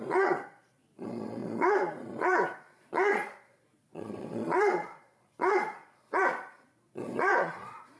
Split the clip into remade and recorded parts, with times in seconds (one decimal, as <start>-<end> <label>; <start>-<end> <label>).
0.0-8.0 remade